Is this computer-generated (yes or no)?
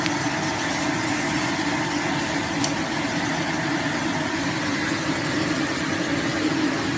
no